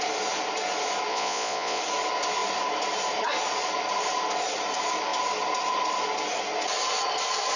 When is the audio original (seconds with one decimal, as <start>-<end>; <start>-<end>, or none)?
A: 0.0-1.1; 1.8-7.6